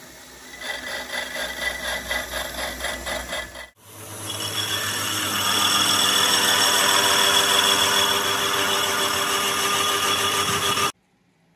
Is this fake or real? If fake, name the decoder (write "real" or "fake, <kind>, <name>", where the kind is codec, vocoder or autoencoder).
real